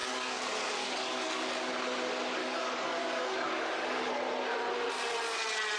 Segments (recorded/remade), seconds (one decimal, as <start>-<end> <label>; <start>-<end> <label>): 0.0-1.7 remade; 1.7-2.4 recorded; 2.4-4.1 remade; 4.1-5.8 recorded